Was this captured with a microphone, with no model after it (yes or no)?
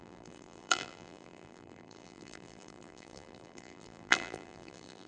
no